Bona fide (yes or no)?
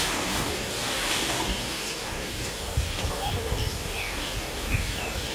no